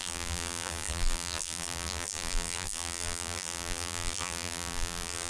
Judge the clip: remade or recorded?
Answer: remade